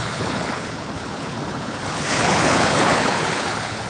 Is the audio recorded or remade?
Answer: remade